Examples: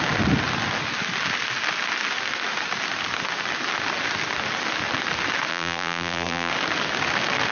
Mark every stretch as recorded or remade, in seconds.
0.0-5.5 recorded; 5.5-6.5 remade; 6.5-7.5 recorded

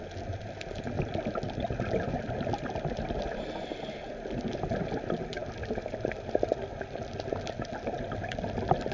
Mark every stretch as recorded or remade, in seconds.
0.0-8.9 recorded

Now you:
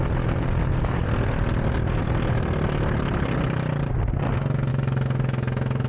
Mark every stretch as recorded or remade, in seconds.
0.0-4.7 recorded; 4.7-5.9 remade